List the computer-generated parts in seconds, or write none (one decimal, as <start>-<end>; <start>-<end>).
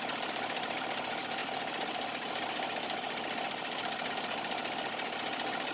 1.4-4.1